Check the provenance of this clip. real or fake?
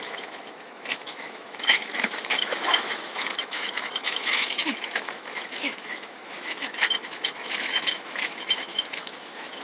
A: fake